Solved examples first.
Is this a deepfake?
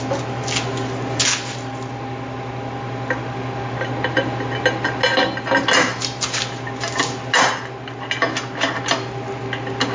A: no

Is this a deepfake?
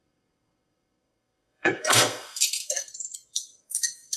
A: yes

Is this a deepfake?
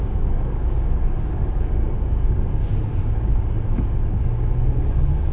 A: yes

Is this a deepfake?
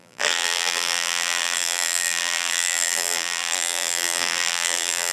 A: yes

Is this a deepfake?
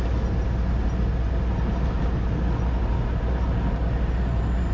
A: no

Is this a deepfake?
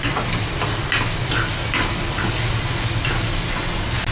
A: no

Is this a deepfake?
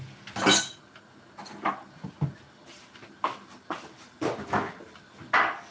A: no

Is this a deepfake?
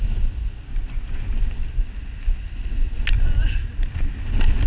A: no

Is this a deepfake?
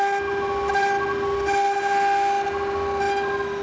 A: no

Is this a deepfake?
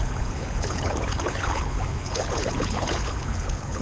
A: yes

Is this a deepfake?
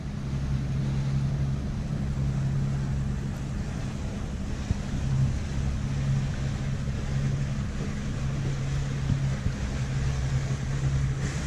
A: no